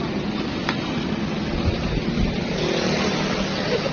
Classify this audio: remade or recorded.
recorded